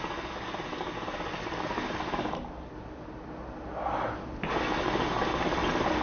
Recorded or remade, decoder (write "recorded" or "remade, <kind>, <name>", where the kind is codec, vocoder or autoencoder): recorded